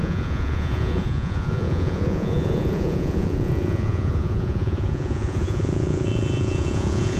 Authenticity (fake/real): fake